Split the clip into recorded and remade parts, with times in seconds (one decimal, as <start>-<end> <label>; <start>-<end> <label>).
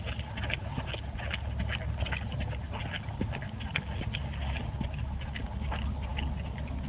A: 0.0-6.9 recorded